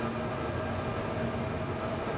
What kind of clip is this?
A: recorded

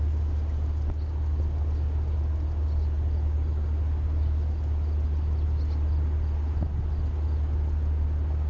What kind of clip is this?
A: recorded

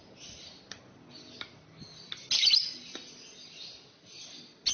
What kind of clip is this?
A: recorded